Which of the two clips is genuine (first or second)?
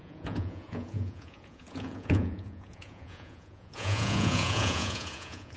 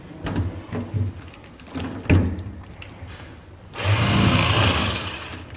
second